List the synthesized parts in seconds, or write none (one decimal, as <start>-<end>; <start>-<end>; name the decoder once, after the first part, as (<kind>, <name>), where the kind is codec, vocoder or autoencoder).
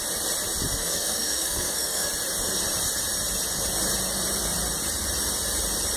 0.8-2.1 (codec, SNAC)